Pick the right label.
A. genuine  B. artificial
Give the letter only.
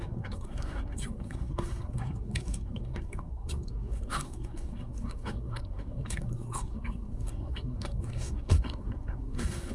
B